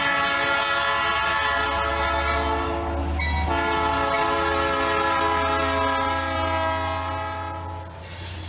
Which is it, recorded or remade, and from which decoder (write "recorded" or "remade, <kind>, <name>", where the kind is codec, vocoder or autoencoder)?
recorded